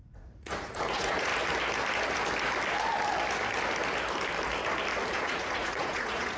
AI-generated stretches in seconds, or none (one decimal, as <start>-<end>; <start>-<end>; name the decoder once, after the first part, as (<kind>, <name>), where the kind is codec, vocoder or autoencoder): 0.0-1.3 (vocoder, Vocos); 5.1-6.4